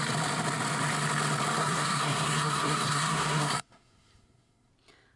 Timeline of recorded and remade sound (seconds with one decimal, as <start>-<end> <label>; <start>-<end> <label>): 0.0-1.6 recorded; 1.6-4.7 remade; 4.7-5.2 recorded